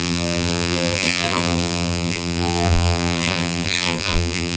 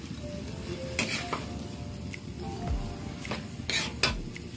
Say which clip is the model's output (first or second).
first